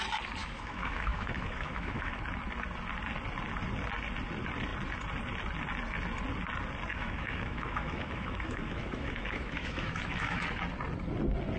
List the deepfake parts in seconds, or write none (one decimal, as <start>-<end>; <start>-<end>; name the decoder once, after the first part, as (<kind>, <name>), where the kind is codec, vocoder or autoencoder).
0.4-2.2 (autoencoder, DAC-VAE); 6.9-10.6